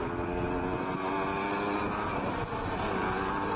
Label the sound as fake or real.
real